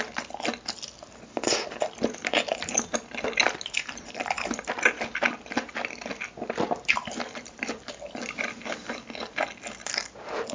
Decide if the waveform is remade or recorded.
recorded